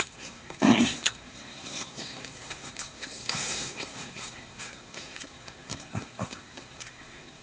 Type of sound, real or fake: fake